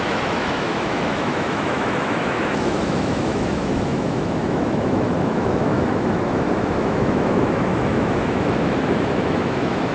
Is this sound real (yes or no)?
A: no